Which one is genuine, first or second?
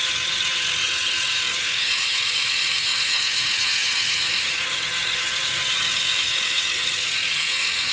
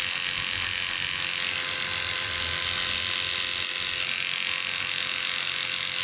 second